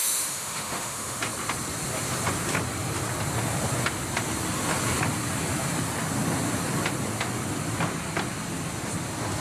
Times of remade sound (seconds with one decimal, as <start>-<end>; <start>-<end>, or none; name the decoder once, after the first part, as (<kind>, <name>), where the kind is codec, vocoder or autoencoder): 0.0-1.2 (autoencoder, DAC-VAE)